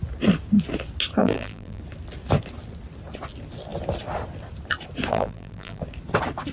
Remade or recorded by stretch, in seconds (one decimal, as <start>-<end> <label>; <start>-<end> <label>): 0.0-1.2 recorded; 1.2-1.8 remade; 1.8-5.1 recorded; 5.1-5.8 remade; 5.8-6.5 recorded